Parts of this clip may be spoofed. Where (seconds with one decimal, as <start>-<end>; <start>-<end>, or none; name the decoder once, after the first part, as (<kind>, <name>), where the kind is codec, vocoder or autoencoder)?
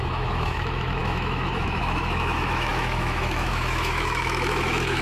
0.0-5.0 (autoencoder, DAC-VAE)